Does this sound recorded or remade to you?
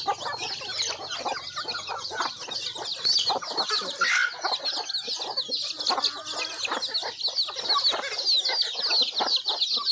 recorded